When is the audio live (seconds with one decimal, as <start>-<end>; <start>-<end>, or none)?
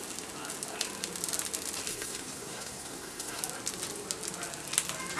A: 0.0-1.9; 3.4-5.2